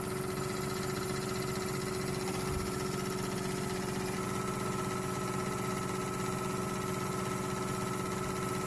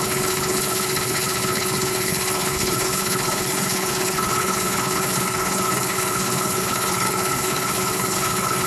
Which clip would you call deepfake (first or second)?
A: second